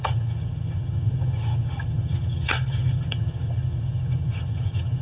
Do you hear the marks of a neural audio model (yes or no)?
yes